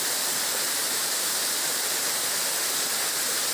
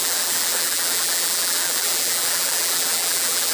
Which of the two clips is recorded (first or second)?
first